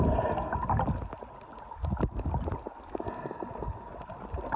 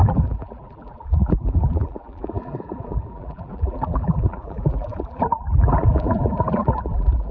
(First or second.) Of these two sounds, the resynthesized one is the second